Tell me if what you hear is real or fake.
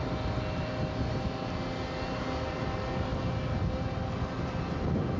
real